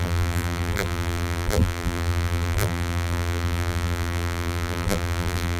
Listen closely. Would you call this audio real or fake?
fake